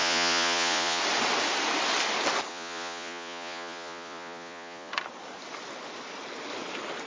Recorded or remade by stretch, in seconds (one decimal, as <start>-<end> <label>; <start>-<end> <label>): 0.0-1.0 remade; 1.0-2.5 recorded; 2.5-4.9 remade; 4.9-7.1 recorded